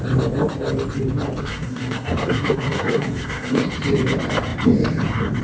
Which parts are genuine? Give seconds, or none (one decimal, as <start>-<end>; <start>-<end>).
0.0-1.4; 3.7-5.4